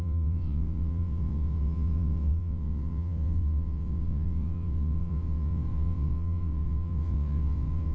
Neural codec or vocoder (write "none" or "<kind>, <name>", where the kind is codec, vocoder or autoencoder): vocoder, WaveNeXt